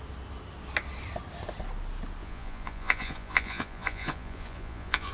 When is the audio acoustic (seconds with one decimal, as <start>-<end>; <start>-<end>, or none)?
0.0-2.2